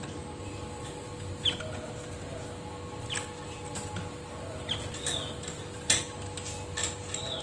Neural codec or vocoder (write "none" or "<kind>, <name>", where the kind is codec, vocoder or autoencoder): none